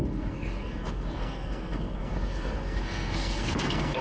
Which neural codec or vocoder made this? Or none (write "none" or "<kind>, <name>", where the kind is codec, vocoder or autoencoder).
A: codec, SNAC